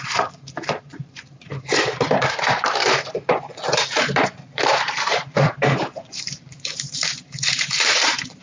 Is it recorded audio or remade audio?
remade